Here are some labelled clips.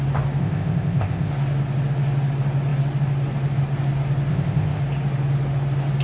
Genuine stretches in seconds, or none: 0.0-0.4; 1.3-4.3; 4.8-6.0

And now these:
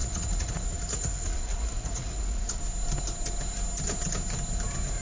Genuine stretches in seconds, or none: 2.6-5.0

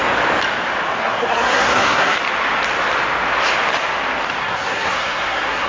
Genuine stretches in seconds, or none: 0.0-1.0; 2.2-4.4

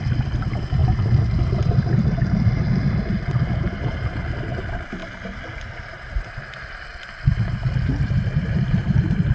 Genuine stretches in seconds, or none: 0.8-4.6; 5.0-5.9; 6.9-7.5

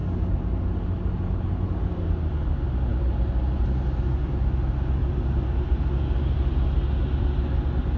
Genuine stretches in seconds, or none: 0.0-8.0

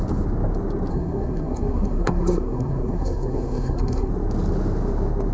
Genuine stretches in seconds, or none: 0.0-0.9; 4.1-5.3

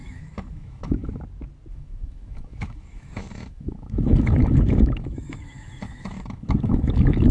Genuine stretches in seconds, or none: 1.0-1.7

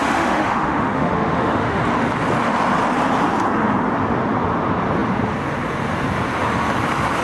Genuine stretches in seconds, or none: 1.8-7.2